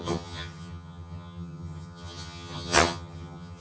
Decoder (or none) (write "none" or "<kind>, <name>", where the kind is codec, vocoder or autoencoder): vocoder, HiFi-GAN